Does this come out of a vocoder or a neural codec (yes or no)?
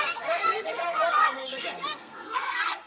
yes